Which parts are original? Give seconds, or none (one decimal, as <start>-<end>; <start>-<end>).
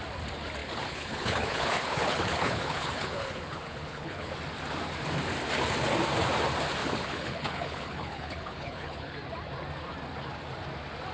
0.0-0.6; 4.3-6.8; 9.1-11.1